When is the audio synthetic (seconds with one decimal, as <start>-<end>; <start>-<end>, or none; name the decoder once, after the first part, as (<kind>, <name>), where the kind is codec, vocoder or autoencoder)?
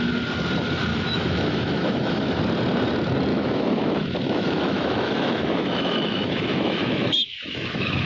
0.9-2.4 (autoencoder, DAC-VAE); 3.3-8.1